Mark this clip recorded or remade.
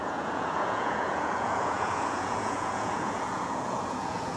remade